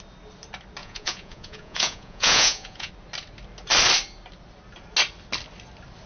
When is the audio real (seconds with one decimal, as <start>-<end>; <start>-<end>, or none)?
0.0-0.8; 2.9-6.1